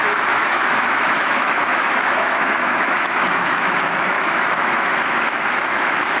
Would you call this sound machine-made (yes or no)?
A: yes